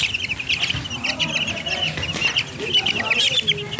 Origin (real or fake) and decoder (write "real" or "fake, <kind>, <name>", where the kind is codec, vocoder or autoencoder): real